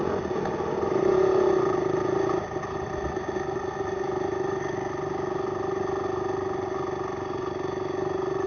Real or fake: real